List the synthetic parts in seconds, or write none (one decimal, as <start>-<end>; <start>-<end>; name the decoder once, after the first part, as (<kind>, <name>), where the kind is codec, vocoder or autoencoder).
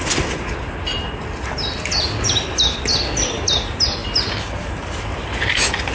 none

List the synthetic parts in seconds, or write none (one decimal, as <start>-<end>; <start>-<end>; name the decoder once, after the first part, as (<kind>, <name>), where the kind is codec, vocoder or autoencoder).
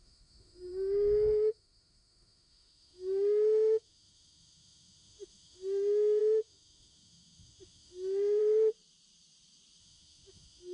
0.0-8.4 (autoencoder, DAC-VAE); 9.8-10.7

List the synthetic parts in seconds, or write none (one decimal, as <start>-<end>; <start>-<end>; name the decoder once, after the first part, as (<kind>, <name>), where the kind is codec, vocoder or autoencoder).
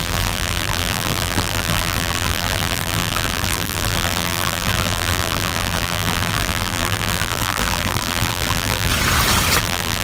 0.0-8.9 (vocoder, BigVGAN v2); 9.6-10.0